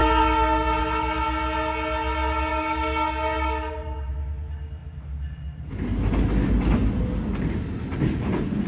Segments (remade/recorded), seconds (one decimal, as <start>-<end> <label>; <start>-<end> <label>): 0.0-0.8 remade; 0.8-2.5 recorded; 2.5-4.1 remade; 4.1-8.7 recorded